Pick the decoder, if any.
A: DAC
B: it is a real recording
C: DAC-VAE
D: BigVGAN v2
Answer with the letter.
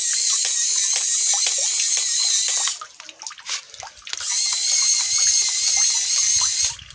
B